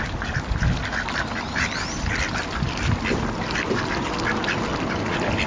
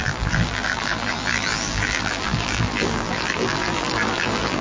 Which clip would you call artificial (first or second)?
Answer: second